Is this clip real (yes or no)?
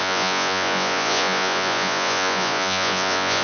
no